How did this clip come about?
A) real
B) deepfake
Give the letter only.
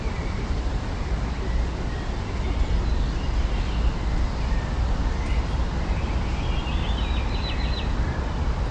A